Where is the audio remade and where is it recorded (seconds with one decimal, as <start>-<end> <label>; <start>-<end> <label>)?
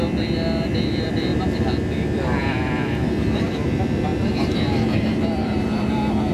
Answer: 0.0-1.3 remade; 1.3-2.4 recorded; 2.4-6.3 remade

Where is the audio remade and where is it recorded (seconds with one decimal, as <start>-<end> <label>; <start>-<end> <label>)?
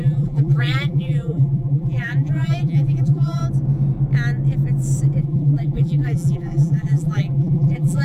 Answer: 0.0-3.4 remade; 3.4-5.2 recorded; 5.2-8.0 remade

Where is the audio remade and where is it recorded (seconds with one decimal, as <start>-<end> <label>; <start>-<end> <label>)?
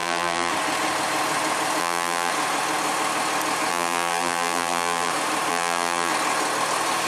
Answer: 0.0-0.5 remade; 0.5-1.8 recorded; 1.8-2.3 remade; 2.3-3.7 recorded; 3.7-5.1 remade; 5.1-5.5 recorded; 5.5-6.1 remade; 6.1-7.1 recorded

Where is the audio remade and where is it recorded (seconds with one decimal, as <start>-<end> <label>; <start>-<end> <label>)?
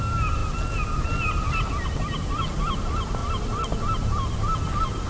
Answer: 0.0-5.1 recorded